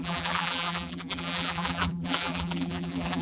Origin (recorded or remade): remade